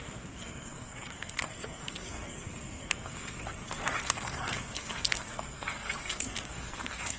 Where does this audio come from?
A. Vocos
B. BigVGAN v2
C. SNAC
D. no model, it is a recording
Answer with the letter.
C